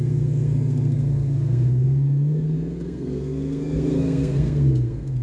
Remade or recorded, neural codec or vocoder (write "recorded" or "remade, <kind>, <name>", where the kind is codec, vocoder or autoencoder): remade, codec, SNAC